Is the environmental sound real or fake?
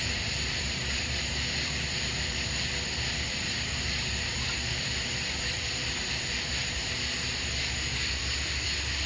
fake